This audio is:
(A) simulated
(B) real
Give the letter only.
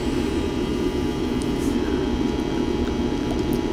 A